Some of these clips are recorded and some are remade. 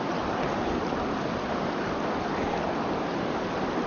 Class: recorded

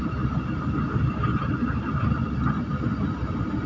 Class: recorded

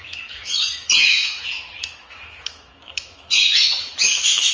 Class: remade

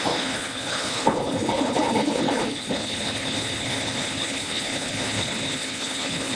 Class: remade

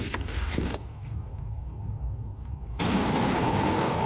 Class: remade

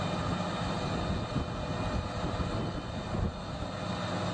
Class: recorded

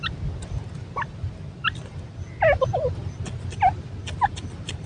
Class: recorded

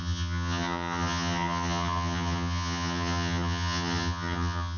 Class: remade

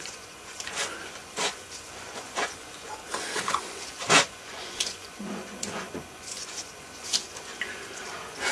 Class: remade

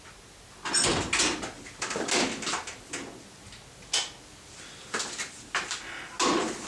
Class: recorded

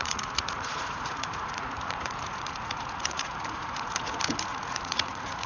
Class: remade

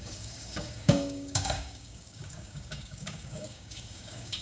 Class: remade